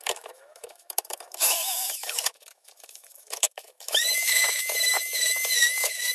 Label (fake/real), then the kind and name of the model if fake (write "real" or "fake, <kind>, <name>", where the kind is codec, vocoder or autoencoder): fake, autoencoder, DAC-VAE